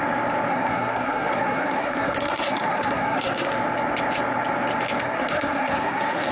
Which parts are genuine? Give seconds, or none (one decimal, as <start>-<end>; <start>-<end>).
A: 0.0-0.5; 3.5-5.0